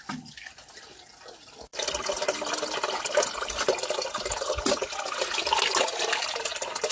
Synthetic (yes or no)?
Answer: no